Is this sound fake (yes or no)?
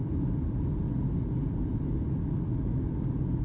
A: no